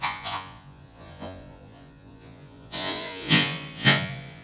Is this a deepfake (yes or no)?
yes